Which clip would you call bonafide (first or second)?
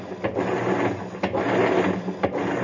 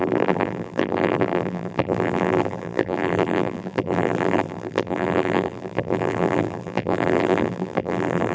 first